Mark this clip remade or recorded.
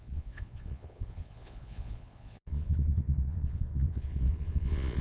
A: remade